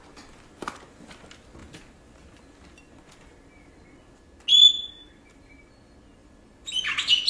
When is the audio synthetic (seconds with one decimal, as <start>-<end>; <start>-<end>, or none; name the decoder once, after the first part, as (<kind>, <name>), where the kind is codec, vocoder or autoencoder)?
6.2-6.7 (vocoder, BigVGAN v2)